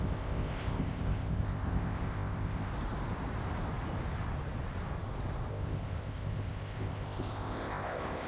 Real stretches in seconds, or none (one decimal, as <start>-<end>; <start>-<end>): 2.7-5.5